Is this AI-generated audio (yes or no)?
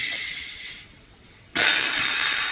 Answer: yes